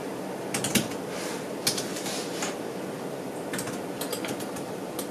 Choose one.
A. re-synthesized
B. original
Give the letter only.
B